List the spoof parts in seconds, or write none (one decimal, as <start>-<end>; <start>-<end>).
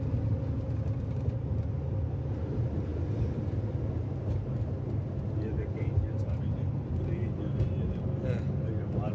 none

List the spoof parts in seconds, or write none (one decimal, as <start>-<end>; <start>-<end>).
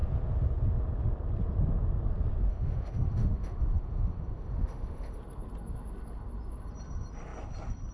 2.5-5.2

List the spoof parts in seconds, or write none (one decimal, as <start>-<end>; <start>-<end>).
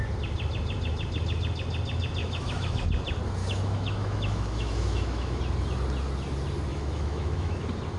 2.2-2.8; 3.4-5.4; 6.7-7.6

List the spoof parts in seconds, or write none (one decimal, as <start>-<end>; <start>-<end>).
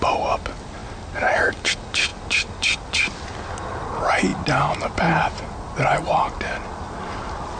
none